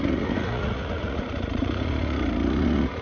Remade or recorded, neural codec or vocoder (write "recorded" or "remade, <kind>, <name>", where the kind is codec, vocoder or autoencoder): remade, vocoder, Vocos